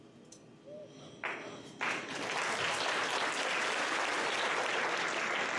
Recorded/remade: recorded